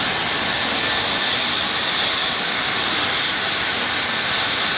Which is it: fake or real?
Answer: real